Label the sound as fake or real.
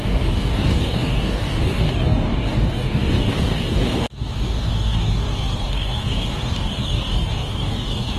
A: fake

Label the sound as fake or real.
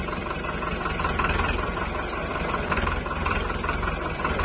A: fake